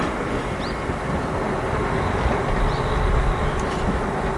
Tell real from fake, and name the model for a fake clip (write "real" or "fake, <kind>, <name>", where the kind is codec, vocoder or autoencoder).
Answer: real